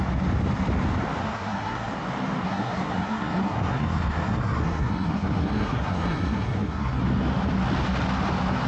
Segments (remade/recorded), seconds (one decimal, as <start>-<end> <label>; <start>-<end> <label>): 0.0-1.2 recorded; 1.2-1.9 remade; 1.9-2.4 recorded; 2.4-7.0 remade; 7.0-8.7 recorded